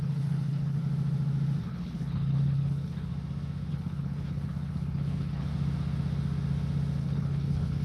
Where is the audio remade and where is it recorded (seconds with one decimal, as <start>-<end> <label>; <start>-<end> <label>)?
0.0-0.8 remade; 0.8-1.6 recorded; 1.6-3.1 remade; 3.1-3.7 recorded; 3.7-5.5 remade; 5.5-7.0 recorded; 7.0-7.8 remade